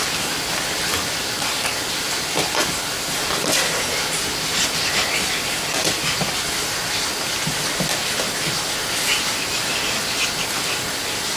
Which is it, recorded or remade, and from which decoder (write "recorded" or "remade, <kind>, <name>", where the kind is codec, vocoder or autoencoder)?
recorded